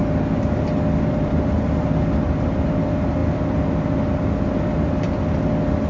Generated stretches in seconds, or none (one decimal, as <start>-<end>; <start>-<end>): none